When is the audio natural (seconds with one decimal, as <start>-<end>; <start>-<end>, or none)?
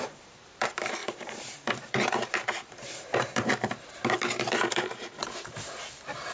5.2-6.3